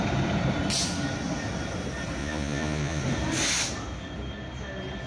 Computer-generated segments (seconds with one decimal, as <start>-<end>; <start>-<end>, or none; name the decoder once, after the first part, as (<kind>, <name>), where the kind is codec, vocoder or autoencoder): 2.2-3.0 (vocoder, Vocos)